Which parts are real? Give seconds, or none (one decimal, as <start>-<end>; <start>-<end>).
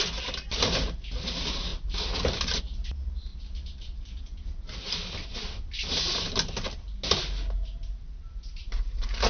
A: 0.0-8.6